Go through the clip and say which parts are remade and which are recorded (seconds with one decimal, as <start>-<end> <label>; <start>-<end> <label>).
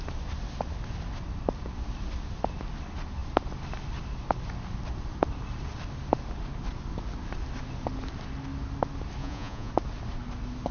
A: 0.0-9.2 recorded; 9.2-9.7 remade; 9.7-10.7 recorded